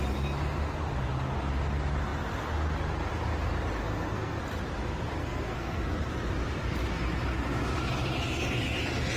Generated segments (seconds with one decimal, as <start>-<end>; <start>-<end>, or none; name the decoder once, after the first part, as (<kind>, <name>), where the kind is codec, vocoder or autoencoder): 3.8-4.4 (codec, SNAC); 5.2-5.9